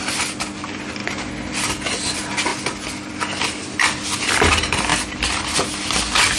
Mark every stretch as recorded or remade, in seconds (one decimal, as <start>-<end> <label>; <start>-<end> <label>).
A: 0.0-1.0 remade; 1.0-1.7 recorded; 1.7-2.5 remade; 2.5-3.1 recorded; 3.1-6.4 remade

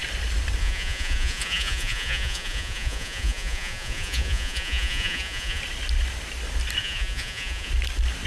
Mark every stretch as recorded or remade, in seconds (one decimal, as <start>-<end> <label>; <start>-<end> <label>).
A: 0.0-0.6 recorded; 0.6-5.6 remade; 5.6-6.8 recorded; 6.8-7.7 remade; 7.7-8.3 recorded

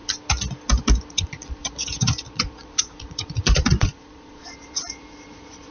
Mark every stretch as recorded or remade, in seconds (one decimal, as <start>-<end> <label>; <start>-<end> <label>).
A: 0.0-1.1 recorded; 1.1-5.7 remade

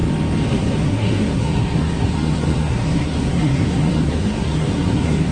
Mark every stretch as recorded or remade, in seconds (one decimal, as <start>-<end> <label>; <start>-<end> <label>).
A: 0.0-0.5 recorded; 0.5-5.3 remade

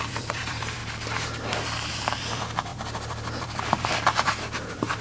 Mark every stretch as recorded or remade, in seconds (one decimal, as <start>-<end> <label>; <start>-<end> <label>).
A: 0.0-0.8 remade; 0.8-1.9 recorded; 1.9-5.0 remade

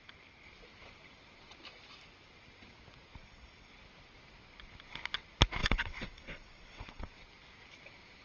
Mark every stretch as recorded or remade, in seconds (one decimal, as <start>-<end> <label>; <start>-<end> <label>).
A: 0.0-3.2 recorded; 3.2-3.7 remade; 3.7-5.6 recorded; 5.6-7.1 remade; 7.1-8.2 recorded

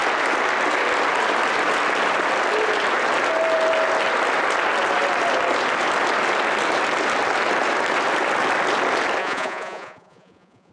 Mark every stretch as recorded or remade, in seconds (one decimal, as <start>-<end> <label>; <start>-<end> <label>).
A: 0.0-9.2 recorded; 9.2-10.7 remade

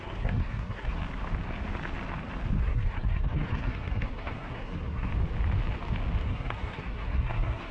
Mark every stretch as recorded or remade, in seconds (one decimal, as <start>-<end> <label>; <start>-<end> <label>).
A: 0.0-1.0 remade; 1.0-2.6 recorded; 2.6-5.1 remade; 5.1-6.2 recorded; 6.2-7.7 remade